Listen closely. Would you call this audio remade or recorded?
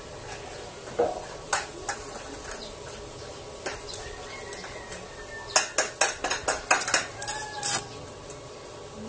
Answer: recorded